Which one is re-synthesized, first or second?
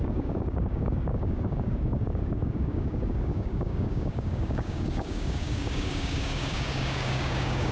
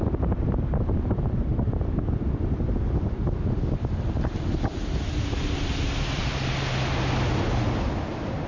first